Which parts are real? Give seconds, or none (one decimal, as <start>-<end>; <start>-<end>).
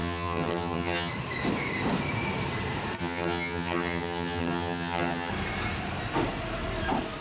1.1-3.0; 5.3-7.2